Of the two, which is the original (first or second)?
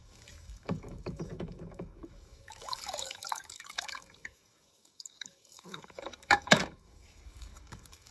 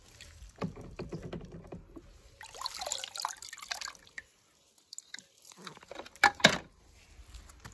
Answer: second